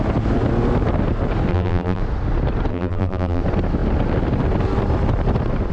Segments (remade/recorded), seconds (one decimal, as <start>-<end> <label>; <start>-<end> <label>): 0.0-1.5 recorded; 1.5-2.0 remade; 2.0-2.7 recorded; 2.7-3.4 remade; 3.4-5.7 recorded